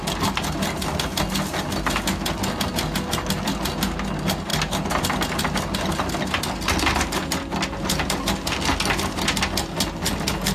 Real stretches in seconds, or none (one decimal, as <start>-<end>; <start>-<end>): 0.0-10.5